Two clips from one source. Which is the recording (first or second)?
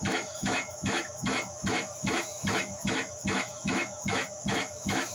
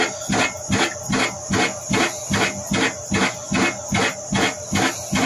second